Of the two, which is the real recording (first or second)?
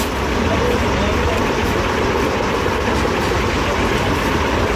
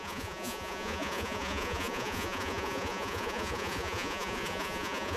first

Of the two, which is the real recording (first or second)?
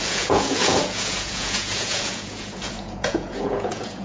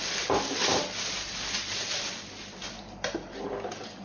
second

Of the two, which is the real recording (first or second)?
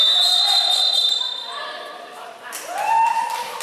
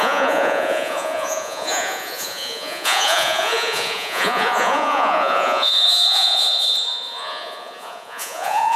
first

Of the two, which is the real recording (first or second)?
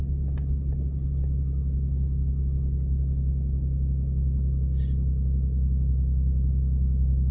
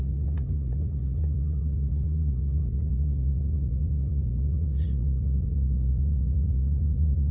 first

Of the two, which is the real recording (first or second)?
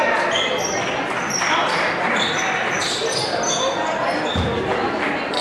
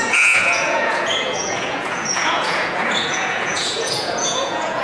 first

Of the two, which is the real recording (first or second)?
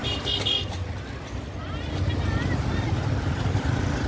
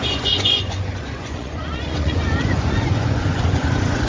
first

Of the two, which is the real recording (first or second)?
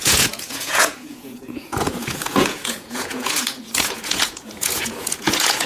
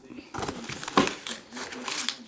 second